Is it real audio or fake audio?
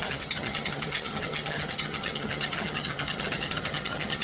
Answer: fake